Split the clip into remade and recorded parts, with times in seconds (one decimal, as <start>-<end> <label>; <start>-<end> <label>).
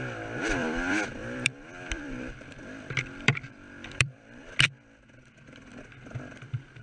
0.0-0.6 recorded; 0.6-4.7 remade; 4.7-5.7 recorded; 5.7-6.8 remade